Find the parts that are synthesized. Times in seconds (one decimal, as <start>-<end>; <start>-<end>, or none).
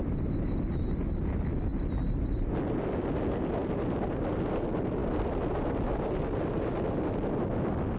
none